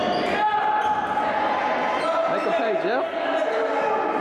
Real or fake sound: real